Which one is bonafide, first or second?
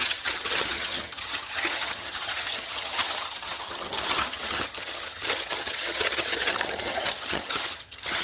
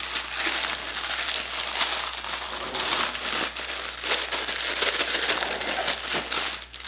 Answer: second